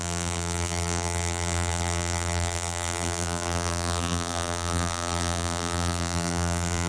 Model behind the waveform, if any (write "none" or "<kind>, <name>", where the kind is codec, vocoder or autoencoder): vocoder, BigVGAN v2